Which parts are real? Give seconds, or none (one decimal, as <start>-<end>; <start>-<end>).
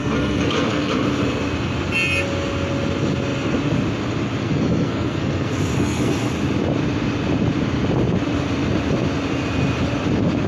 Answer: 0.9-4.4; 6.3-10.5